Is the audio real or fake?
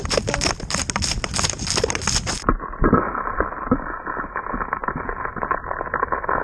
real